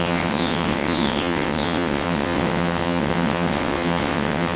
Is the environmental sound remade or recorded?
remade